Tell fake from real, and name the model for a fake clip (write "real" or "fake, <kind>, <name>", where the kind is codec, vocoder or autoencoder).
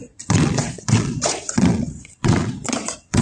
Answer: fake, vocoder, Vocos